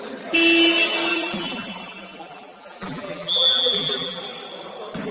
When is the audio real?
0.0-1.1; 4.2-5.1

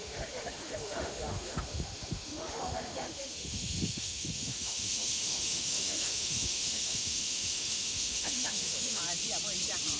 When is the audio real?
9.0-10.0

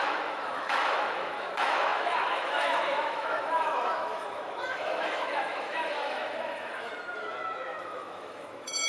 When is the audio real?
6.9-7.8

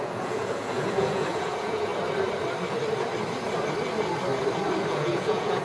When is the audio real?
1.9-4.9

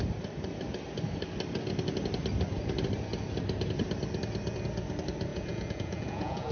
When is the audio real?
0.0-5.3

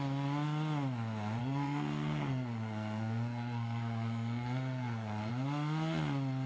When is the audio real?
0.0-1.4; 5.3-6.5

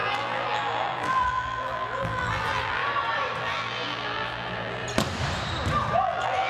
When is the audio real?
2.8-3.4; 4.8-6.0

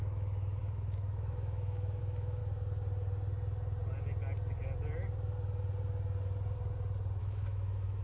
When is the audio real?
2.4-7.2